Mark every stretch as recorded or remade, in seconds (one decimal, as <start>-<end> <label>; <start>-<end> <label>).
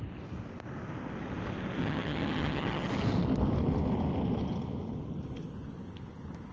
0.0-1.8 recorded; 1.8-2.9 remade; 2.9-6.5 recorded